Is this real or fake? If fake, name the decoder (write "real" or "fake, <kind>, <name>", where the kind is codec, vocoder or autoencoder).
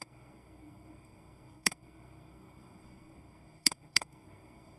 fake, codec, SNAC